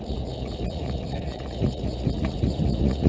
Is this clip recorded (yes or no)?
no